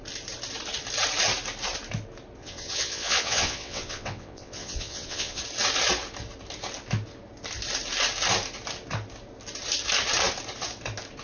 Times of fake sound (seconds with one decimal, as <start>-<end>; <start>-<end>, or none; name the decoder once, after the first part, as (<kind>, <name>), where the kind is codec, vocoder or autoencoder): 2.4-5.4 (vocoder, WaveNeXt)